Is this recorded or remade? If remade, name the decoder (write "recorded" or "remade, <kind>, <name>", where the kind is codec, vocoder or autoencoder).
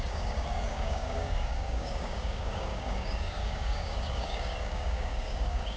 remade, codec, DAC